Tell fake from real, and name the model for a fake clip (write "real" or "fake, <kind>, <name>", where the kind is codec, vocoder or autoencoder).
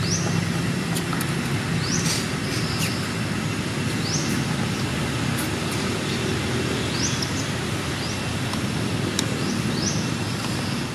real